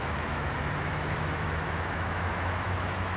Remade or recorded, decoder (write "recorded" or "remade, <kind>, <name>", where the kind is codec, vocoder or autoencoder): remade, autoencoder, DAC-VAE